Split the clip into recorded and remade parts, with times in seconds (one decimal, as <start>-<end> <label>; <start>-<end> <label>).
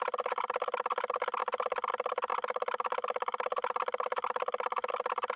0.0-1.4 recorded; 1.4-1.9 remade; 1.9-2.3 recorded; 2.3-4.9 remade; 4.9-5.4 recorded